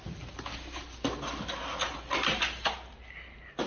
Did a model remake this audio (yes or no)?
no